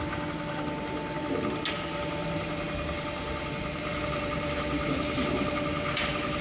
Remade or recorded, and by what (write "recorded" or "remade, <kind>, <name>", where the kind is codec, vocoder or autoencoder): recorded